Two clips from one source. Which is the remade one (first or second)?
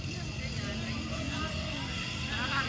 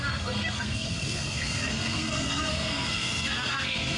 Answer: second